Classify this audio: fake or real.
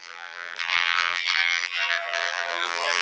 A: fake